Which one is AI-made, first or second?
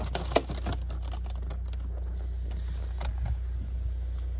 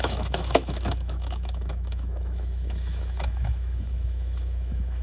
second